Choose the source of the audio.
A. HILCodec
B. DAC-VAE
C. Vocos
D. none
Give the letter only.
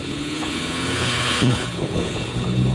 A